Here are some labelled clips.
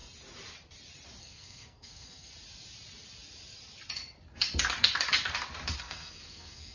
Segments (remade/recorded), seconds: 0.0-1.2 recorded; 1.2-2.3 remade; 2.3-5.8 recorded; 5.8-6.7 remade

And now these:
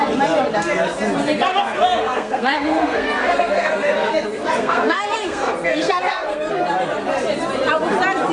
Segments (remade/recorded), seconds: 0.0-1.5 recorded; 1.5-6.5 remade; 6.5-8.3 recorded

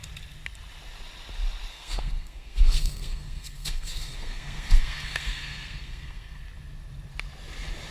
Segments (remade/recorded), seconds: 0.0-1.7 recorded; 1.7-6.4 remade; 6.4-7.9 recorded

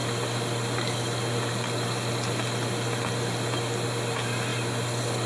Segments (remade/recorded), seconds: 0.0-5.3 recorded

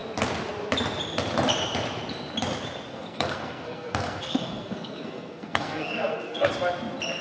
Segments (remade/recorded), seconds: 0.0-2.9 recorded; 2.9-6.5 remade; 6.5-7.2 recorded

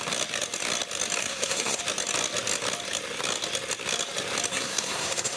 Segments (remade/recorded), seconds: 0.0-1.2 recorded; 1.2-1.8 remade; 1.8-4.5 recorded; 4.5-5.4 remade

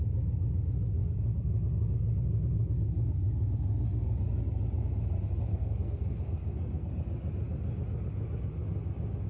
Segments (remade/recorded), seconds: 0.0-5.5 recorded; 5.5-6.9 remade; 6.9-9.3 recorded